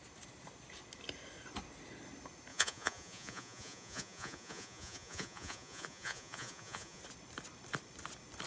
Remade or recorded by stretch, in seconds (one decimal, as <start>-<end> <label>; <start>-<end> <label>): 0.0-2.5 recorded; 2.5-7.0 remade; 7.0-8.5 recorded